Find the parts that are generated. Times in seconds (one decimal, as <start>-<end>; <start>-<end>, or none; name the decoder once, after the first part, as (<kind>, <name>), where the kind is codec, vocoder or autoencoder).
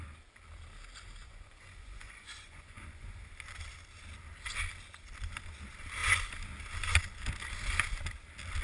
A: 1.2-3.3 (vocoder, Vocos)